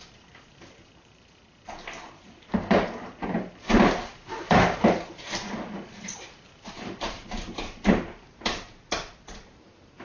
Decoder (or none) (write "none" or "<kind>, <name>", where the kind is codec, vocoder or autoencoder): vocoder, BigVGAN v2